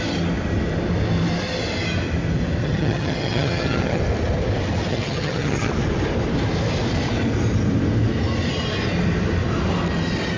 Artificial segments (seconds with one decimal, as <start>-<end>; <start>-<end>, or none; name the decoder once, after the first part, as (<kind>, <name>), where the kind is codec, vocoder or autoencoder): 2.6-4.0 (vocoder, HiFi-GAN); 4.9-5.7